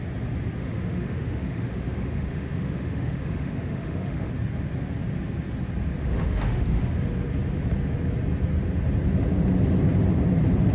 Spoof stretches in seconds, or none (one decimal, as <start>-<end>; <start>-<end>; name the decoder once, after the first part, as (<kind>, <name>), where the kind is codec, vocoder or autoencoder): 0.6-4.3 (autoencoder, DAC-VAE); 6.0-6.8